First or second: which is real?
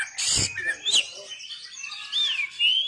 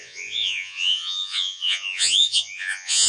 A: first